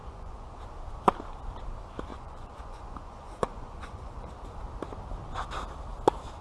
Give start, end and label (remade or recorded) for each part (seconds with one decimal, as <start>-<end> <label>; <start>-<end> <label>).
0.0-0.6 remade; 0.6-2.1 recorded; 2.1-4.3 remade; 4.3-6.4 recorded